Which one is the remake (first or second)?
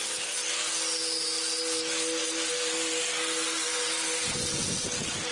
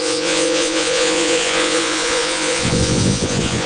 second